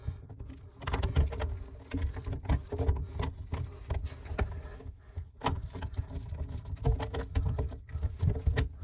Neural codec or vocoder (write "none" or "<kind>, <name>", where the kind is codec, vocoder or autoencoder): none